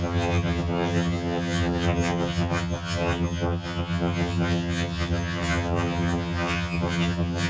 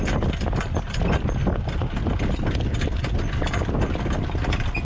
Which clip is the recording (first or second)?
second